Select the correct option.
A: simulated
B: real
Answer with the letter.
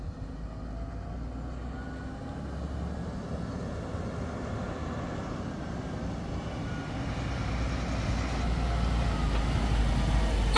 B